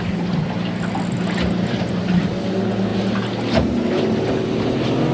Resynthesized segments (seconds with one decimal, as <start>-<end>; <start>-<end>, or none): none